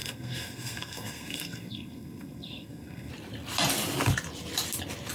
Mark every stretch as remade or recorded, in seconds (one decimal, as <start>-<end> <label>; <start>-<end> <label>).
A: 0.0-3.1 remade; 3.1-5.1 recorded